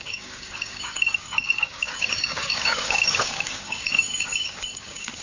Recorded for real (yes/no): no